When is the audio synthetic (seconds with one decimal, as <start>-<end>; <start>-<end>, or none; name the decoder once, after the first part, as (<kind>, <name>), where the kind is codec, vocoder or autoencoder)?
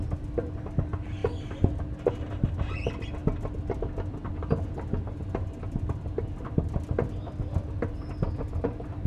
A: none